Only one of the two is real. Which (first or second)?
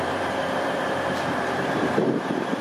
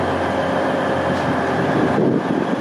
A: second